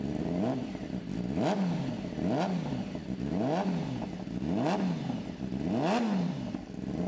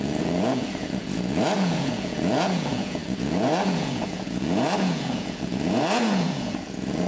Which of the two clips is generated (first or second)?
second